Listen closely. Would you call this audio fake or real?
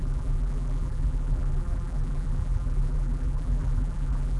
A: fake